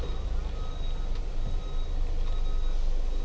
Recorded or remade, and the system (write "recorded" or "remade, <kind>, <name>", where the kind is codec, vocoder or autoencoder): recorded